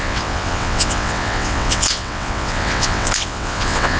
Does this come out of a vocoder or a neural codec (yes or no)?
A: yes